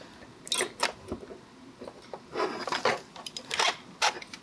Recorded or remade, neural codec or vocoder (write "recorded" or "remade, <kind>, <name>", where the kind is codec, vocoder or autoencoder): recorded